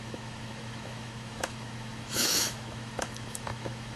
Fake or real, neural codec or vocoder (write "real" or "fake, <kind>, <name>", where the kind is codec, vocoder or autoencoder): fake, autoencoder, DAC-VAE